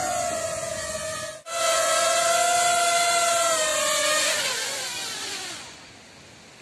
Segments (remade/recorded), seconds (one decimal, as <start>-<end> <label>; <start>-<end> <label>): 0.0-2.4 remade; 2.4-3.7 recorded; 3.7-5.9 remade; 5.9-6.6 recorded